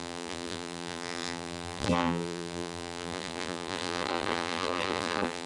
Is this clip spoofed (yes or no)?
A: yes